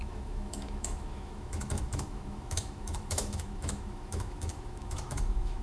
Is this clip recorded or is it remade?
remade